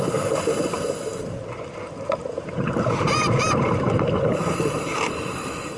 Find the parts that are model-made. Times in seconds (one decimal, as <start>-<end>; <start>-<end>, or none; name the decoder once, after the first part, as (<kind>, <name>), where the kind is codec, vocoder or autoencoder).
2.2-5.8 (vocoder, BigVGAN v2)